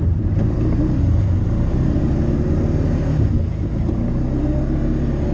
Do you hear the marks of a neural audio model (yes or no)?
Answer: no